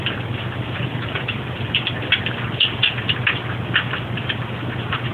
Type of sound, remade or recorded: remade